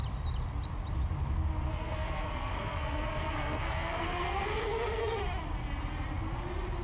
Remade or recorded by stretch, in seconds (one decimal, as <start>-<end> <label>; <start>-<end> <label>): 0.0-1.7 recorded; 1.7-5.2 remade; 5.2-6.8 recorded